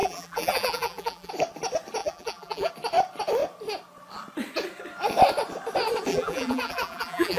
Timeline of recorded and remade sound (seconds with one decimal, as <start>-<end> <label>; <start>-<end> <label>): 0.0-1.3 remade; 1.3-2.0 recorded; 2.0-2.7 remade; 2.7-6.1 recorded; 6.1-7.4 remade